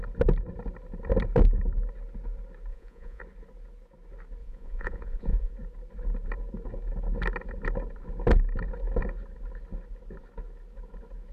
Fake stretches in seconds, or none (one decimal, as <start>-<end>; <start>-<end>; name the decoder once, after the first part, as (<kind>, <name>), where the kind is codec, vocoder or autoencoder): 2.7-3.2 (vocoder, Vocos); 4.4-5.5